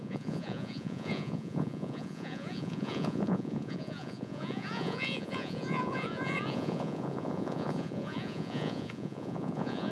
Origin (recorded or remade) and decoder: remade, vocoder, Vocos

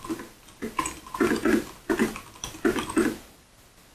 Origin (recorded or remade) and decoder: recorded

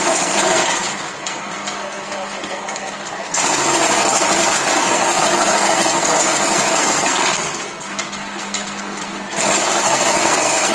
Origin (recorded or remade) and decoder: remade, codec, SNAC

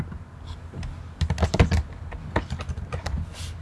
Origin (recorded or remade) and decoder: recorded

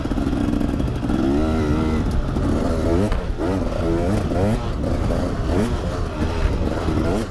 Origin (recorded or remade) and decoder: recorded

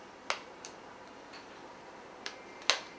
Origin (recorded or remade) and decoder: recorded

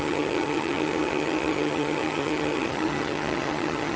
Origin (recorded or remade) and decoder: remade, vocoder, HiFi-GAN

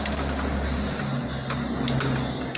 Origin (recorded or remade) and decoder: recorded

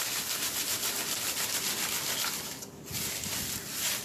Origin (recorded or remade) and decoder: recorded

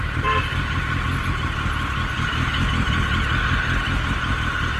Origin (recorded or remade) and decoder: recorded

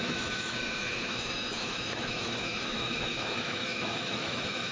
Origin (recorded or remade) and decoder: remade, autoencoder, DAC-VAE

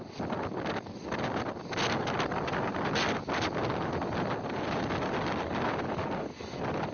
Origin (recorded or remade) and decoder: recorded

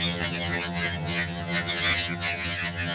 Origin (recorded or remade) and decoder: remade, vocoder, HiFi-GAN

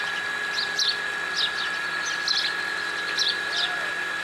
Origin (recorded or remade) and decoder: recorded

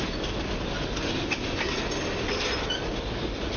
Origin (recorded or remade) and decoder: recorded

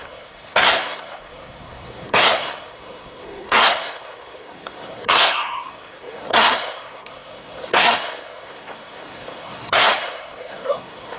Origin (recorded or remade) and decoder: remade, codec, SNAC